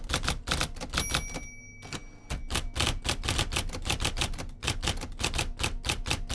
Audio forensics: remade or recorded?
recorded